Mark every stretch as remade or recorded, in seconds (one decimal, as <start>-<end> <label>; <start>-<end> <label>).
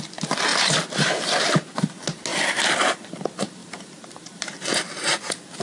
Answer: 0.0-2.3 recorded; 2.3-2.8 remade; 2.8-3.6 recorded; 3.6-5.6 remade